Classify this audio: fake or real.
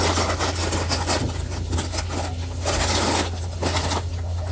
real